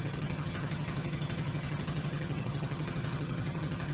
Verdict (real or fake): fake